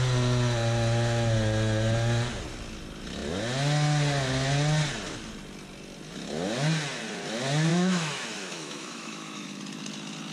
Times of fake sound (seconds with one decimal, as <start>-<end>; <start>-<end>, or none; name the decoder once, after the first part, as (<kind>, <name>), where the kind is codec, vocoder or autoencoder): 7.7-9.6 (autoencoder, DAC-VAE)